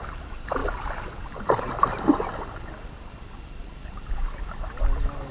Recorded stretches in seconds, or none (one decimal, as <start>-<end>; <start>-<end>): 0.0-5.3

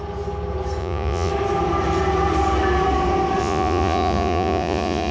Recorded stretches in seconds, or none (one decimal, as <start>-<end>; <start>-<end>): 0.0-0.8; 1.3-3.4